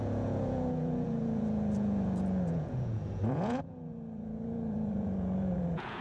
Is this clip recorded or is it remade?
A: remade